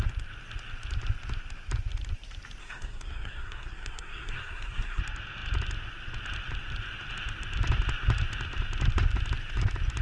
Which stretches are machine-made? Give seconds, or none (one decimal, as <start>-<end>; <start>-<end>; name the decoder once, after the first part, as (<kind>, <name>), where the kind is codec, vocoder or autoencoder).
2.6-5.0 (codec, SNAC)